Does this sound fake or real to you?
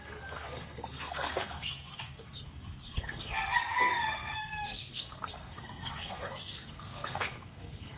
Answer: fake